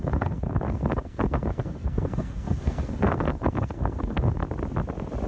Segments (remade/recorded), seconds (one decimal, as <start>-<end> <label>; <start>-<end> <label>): 0.0-4.4 remade; 4.4-5.3 recorded